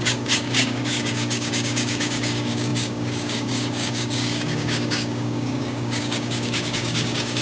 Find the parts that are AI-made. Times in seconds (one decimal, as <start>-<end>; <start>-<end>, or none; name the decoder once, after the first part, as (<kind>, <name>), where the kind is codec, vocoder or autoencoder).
0.0-7.4 (codec, DAC)